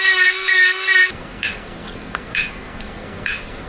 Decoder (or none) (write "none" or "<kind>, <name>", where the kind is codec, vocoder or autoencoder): codec, SNAC